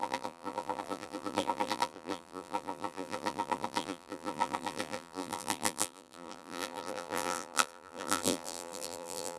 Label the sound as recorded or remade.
remade